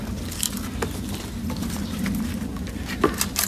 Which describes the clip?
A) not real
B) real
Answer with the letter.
B